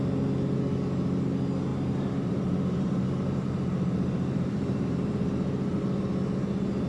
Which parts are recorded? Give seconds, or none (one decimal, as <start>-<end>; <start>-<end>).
0.0-1.7; 5.8-6.9